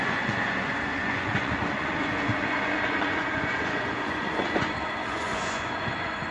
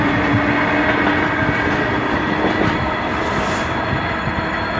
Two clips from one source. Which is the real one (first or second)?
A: second